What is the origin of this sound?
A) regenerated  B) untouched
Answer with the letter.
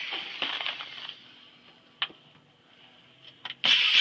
B